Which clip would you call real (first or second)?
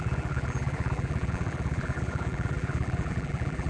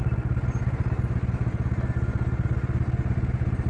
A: second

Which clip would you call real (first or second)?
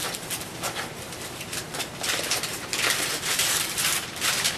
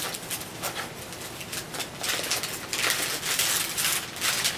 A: second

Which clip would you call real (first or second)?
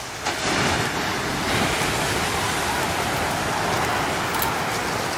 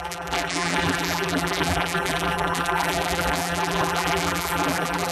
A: first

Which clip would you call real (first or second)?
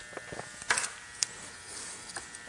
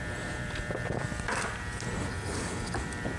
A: first